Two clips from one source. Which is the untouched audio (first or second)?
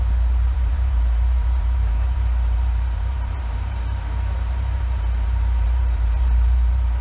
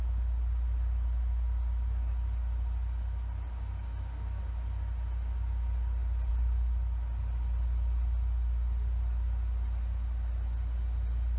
second